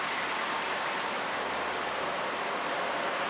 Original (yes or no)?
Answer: yes